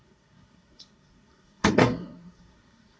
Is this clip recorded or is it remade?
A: remade